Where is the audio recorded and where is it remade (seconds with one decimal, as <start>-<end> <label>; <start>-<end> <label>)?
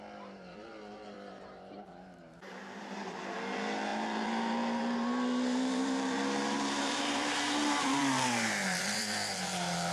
0.0-9.9 remade